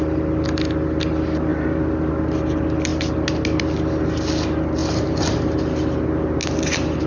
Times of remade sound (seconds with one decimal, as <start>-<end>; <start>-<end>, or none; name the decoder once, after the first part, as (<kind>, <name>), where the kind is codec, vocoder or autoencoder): 1.5-2.1 (vocoder, BigVGAN v2); 4.8-5.8